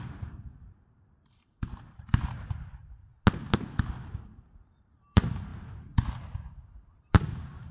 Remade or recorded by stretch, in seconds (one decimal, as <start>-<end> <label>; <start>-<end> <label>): 0.0-3.1 remade; 3.1-4.1 recorded; 4.1-5.5 remade; 5.5-7.0 recorded; 7.0-7.7 remade